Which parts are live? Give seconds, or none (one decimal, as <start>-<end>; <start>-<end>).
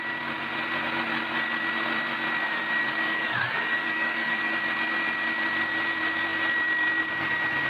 0.0-2.8; 4.5-7.7